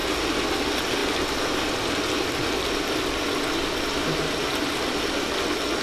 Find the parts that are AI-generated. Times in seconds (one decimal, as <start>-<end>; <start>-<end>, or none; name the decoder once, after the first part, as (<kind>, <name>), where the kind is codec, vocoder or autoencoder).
none

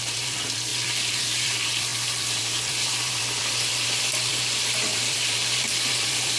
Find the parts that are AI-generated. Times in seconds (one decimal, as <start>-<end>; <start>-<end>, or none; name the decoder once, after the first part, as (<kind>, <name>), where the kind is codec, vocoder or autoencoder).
0.0-6.4 (vocoder, BigVGAN v2)

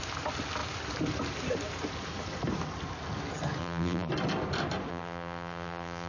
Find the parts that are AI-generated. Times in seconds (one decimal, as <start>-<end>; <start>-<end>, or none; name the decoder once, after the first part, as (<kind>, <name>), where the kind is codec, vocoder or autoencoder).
3.6-4.1 (vocoder, BigVGAN v2); 4.9-6.1

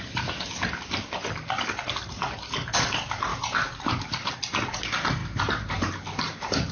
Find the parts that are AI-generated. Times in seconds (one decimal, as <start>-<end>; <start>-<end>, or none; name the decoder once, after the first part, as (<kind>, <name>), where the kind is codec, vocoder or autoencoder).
3.3-4.3 (vocoder, BigVGAN v2); 5.2-6.7

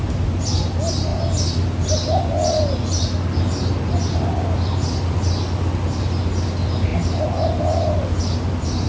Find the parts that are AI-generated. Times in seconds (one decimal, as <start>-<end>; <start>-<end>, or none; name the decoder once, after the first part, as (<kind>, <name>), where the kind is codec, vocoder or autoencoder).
none

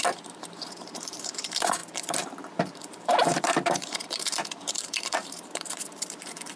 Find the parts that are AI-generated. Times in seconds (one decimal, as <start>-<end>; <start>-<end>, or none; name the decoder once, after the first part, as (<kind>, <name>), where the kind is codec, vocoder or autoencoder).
0.0-6.6 (vocoder, BigVGAN v2)

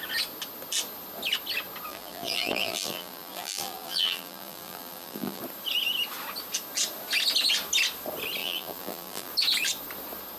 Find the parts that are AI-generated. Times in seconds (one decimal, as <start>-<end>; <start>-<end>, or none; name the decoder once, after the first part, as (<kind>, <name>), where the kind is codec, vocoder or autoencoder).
1.9-5.4 (vocoder, BigVGAN v2); 8.4-9.3

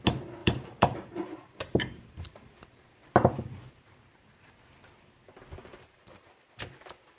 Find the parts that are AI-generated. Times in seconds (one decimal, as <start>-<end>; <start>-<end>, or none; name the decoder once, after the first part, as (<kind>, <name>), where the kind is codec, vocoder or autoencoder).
0.4-2.5 (vocoder, BigVGAN v2); 5.6-6.7